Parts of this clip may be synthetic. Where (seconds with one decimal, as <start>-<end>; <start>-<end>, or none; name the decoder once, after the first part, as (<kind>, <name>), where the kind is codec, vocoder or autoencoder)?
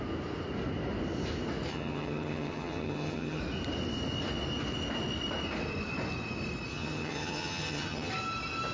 1.7-3.4 (vocoder, HiFi-GAN); 6.7-8.1